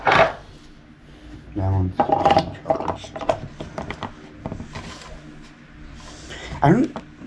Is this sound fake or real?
real